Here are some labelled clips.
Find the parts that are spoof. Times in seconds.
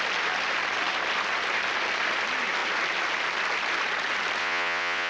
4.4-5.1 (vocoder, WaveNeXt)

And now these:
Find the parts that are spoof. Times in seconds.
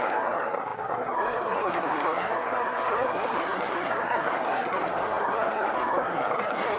0.0-6.8 (codec, SNAC)